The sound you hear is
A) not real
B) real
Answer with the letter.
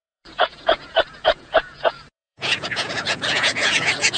A